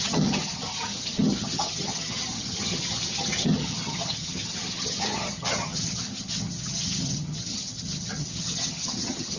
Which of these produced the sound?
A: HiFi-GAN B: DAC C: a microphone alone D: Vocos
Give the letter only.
A